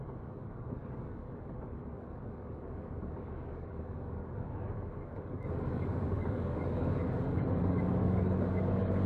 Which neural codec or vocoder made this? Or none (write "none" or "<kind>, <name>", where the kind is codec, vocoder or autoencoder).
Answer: codec, DAC